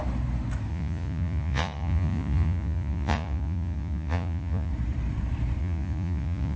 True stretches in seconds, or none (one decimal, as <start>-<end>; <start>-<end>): 0.0-0.7; 4.7-5.6